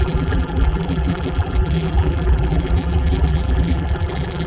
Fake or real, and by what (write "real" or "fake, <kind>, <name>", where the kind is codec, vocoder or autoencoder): fake, vocoder, BigVGAN v2